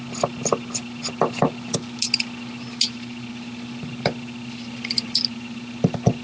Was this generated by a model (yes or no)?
no